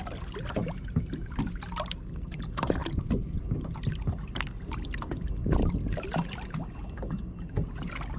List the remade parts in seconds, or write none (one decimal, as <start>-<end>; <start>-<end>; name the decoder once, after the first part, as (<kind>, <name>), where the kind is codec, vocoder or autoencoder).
none